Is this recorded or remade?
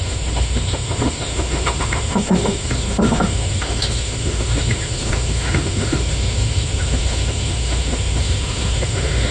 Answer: remade